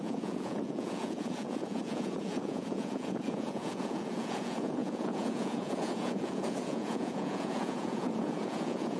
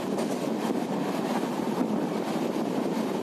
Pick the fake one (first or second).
first